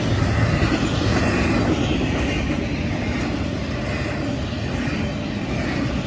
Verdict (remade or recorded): recorded